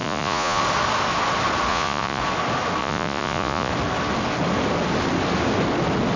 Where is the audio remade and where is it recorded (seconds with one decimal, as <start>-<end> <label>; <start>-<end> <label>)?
0.0-0.6 remade; 0.6-1.7 recorded; 1.7-2.2 remade; 2.2-2.8 recorded; 2.8-3.7 remade; 3.7-6.2 recorded